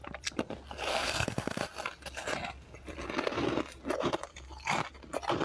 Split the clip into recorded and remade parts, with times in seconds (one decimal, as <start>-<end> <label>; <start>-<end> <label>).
0.0-0.9 recorded; 0.9-1.6 remade; 1.6-5.4 recorded